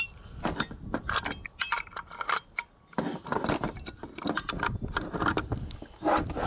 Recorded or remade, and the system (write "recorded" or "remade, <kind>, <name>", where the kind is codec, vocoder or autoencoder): recorded